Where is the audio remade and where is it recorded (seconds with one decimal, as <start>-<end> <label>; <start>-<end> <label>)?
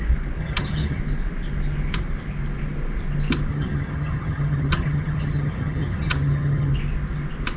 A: 0.0-0.4 recorded; 0.4-1.0 remade; 1.0-3.5 recorded; 3.5-6.7 remade; 6.7-7.6 recorded